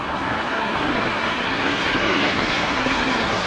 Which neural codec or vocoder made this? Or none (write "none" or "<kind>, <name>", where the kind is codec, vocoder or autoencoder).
codec, SNAC